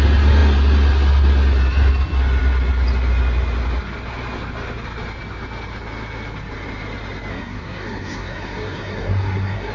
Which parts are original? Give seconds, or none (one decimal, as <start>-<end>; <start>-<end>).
0.0-7.3